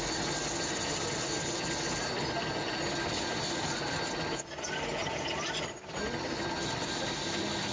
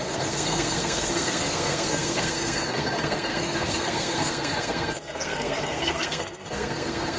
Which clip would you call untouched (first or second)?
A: first